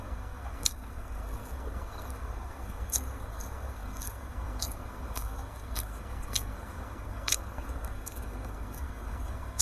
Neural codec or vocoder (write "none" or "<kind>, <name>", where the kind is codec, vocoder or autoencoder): codec, SNAC